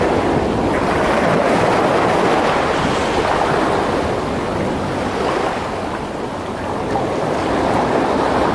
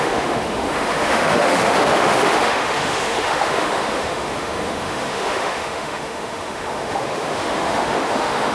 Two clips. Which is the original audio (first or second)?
first